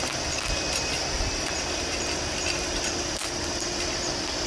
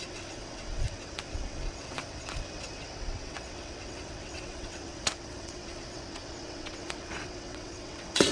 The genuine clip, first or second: first